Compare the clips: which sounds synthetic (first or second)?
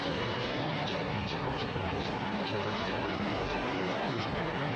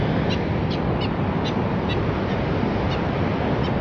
first